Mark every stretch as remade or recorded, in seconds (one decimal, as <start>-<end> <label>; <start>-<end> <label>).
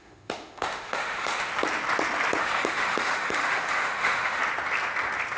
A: 0.0-1.5 remade; 1.5-2.4 recorded; 2.4-4.4 remade; 4.4-5.4 recorded